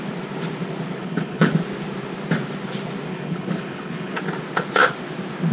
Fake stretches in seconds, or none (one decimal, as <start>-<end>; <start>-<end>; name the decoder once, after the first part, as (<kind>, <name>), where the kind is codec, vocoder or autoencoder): 1.0-1.5 (codec, HILCodec); 3.1-4.2